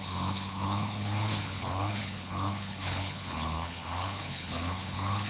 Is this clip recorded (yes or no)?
no